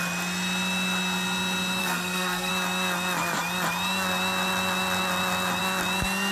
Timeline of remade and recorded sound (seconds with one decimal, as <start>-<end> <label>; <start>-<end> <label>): 0.0-1.8 recorded; 1.8-2.5 remade; 2.5-6.3 recorded